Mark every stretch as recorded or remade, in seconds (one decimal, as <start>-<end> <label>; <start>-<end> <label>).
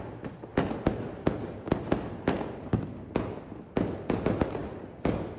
0.0-5.4 recorded